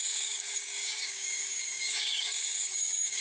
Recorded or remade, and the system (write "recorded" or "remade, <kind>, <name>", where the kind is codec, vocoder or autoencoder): remade, codec, DAC